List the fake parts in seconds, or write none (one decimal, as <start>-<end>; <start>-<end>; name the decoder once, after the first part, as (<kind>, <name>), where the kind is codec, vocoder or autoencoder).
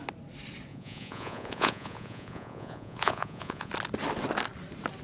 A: 0.7-3.7 (vocoder, Vocos)